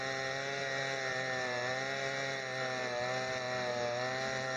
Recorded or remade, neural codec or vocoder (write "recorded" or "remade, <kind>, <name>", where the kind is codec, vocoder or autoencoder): recorded